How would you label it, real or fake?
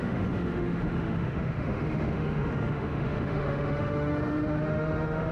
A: fake